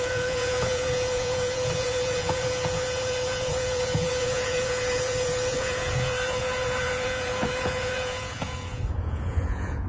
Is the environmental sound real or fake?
fake